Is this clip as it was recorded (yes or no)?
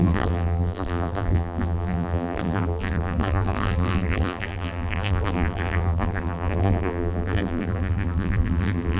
no